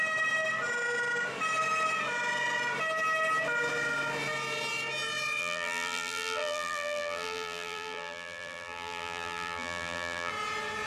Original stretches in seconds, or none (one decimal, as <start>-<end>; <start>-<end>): 0.0-5.4; 10.3-10.9